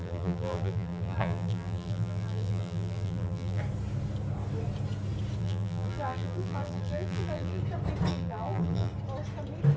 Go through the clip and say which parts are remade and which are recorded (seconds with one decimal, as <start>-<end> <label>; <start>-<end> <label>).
0.0-3.6 remade; 3.6-5.4 recorded; 5.4-7.6 remade; 7.6-8.1 recorded; 8.1-8.9 remade; 8.9-9.8 recorded